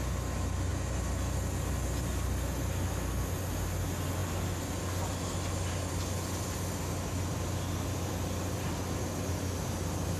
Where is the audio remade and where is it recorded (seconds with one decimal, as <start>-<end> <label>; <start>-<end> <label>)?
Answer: 0.0-10.2 recorded